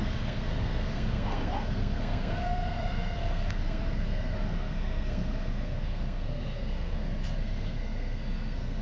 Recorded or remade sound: remade